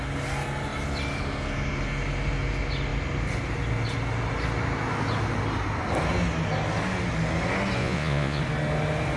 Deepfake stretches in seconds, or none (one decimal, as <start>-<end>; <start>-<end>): 7.8-8.4